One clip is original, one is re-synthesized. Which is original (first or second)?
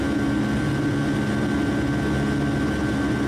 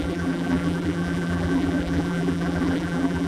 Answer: first